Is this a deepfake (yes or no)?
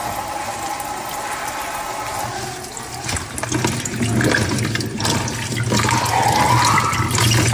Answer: no